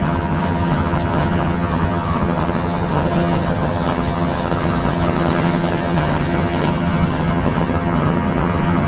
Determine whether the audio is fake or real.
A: fake